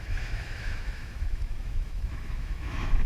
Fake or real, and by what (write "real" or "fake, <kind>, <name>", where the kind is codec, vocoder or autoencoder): fake, autoencoder, DAC-VAE